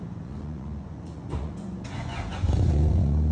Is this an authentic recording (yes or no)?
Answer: no